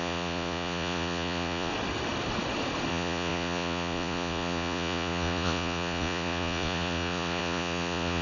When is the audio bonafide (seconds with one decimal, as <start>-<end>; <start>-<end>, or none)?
1.7-2.9